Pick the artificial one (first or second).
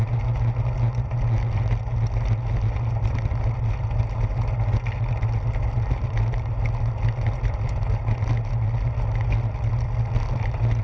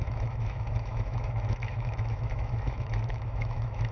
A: second